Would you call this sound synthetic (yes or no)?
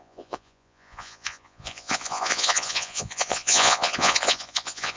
yes